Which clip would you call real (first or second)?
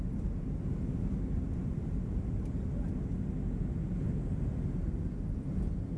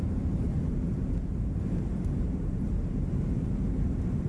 first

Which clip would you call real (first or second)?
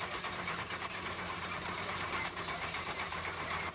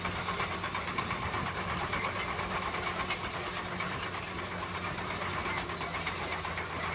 second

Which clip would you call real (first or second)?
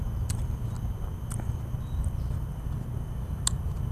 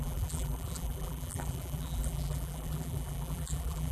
first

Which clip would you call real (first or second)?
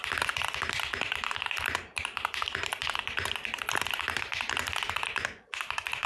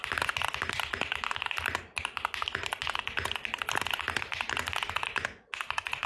second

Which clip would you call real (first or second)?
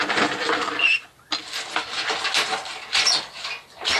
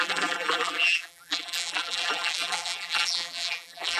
first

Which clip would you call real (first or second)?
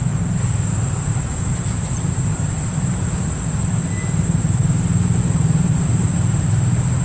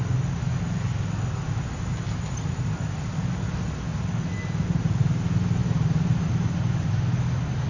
second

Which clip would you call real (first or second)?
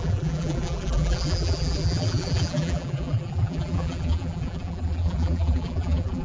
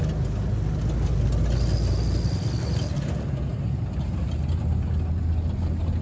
second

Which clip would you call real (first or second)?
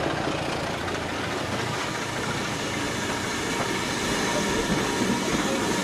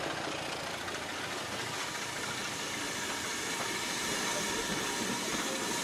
first